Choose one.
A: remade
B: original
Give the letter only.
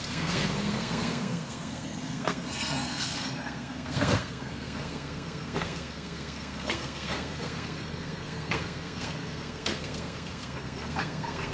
A